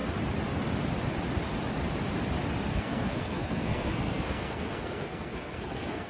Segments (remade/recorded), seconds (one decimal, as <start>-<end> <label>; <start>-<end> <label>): 0.0-2.7 recorded; 2.7-6.1 remade